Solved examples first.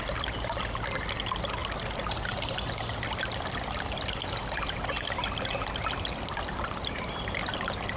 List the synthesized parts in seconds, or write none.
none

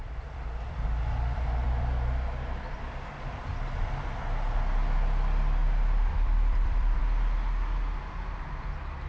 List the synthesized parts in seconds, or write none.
0.0-3.4 (vocoder, BigVGAN v2); 5.6-7.0

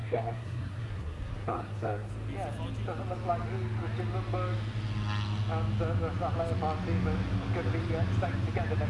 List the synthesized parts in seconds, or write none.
0.0-2.1 (codec, SNAC)

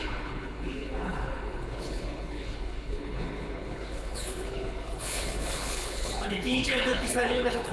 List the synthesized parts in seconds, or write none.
0.0-7.7 (codec, HILCodec)